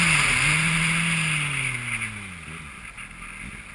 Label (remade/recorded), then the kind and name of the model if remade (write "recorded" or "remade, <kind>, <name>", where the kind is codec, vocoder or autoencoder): recorded